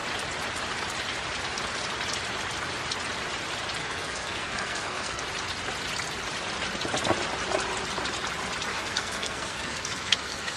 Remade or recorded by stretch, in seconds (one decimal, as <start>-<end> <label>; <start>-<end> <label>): 0.0-3.8 recorded; 3.8-5.2 remade; 5.2-8.7 recorded; 8.7-10.6 remade